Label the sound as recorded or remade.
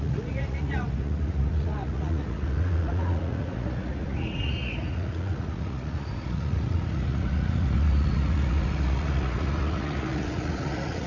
remade